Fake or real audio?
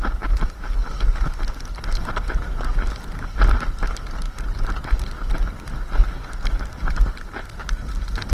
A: real